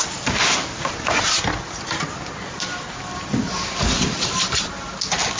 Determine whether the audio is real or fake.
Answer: real